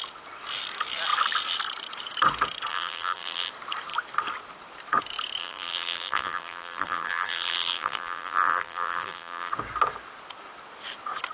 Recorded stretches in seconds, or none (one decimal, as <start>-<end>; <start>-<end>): 0.0-2.7; 3.5-5.4; 9.5-11.3